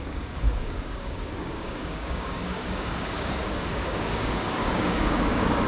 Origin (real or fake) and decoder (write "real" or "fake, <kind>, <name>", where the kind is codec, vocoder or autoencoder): fake, codec, DAC